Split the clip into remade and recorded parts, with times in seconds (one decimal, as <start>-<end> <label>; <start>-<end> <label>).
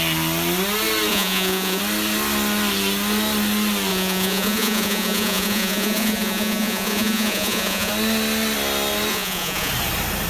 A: 0.0-1.1 recorded; 1.1-1.8 remade; 1.8-3.9 recorded; 3.9-7.9 remade; 7.9-9.1 recorded; 9.1-9.7 remade; 9.7-10.3 recorded